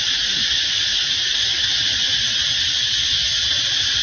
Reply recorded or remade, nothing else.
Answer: recorded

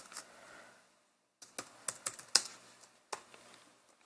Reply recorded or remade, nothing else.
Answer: recorded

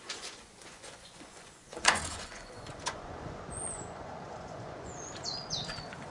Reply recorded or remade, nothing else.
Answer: remade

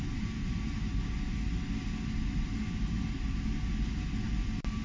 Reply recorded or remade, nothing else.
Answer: recorded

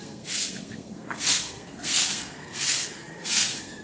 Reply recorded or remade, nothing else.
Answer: remade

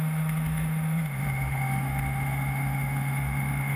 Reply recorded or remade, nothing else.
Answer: remade